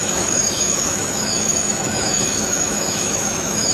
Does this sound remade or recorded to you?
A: remade